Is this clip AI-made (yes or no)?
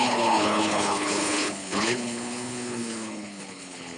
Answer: yes